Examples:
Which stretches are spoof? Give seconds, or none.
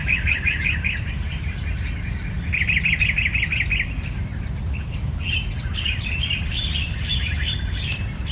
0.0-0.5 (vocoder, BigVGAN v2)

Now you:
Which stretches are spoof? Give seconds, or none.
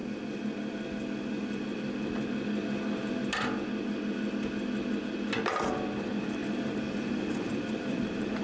6.4-8.4 (vocoder, BigVGAN v2)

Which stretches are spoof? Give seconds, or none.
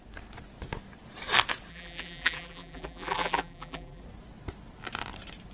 1.7-4.0 (vocoder, BigVGAN v2)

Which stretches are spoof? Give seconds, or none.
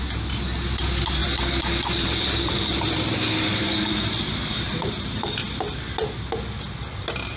1.2-5.6 (vocoder, BigVGAN v2)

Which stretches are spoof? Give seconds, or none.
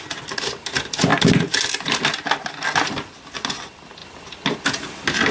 none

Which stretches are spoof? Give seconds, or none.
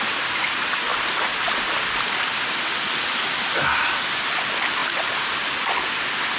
4.8-5.4 (vocoder, BigVGAN v2)